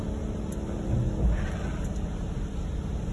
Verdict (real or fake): real